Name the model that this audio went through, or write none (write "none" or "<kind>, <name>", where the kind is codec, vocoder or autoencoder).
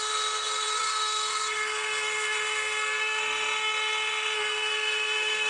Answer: codec, SNAC